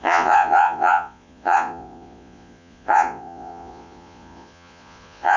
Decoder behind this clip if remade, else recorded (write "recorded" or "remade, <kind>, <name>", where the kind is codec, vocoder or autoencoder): remade, vocoder, Vocos